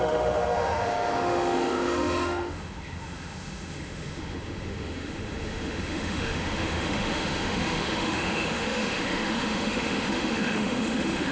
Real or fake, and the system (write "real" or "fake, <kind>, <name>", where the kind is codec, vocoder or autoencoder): fake, autoencoder, DAC-VAE